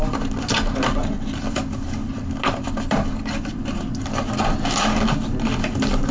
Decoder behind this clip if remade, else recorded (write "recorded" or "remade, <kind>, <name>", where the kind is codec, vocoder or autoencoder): recorded